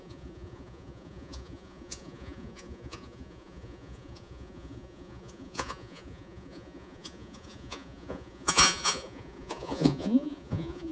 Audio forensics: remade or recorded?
remade